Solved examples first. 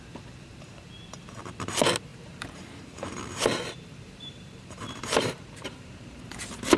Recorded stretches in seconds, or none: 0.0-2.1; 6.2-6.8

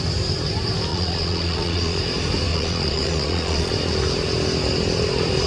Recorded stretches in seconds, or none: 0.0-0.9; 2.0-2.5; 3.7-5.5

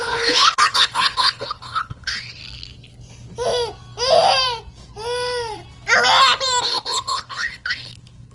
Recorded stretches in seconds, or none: 2.4-6.6